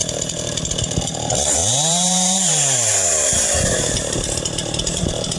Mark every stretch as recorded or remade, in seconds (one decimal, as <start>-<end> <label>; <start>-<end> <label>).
0.0-5.4 remade